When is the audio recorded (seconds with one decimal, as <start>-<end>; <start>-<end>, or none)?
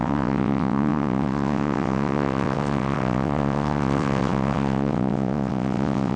none